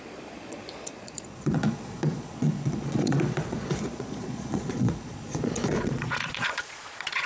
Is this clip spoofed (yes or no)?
yes